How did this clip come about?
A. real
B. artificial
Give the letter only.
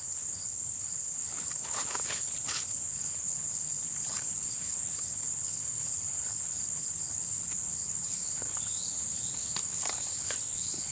B